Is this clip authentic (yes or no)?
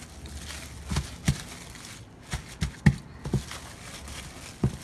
yes